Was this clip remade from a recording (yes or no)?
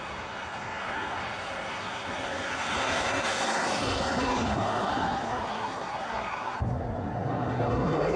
yes